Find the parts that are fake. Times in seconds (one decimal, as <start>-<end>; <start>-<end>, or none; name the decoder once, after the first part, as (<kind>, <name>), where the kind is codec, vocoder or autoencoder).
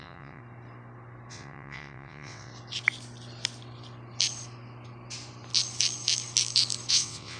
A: 0.0-0.4 (vocoder, WaveNeXt); 1.3-2.5; 6.9-7.4